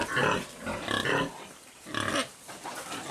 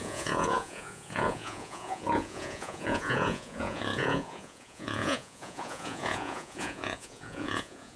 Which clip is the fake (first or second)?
second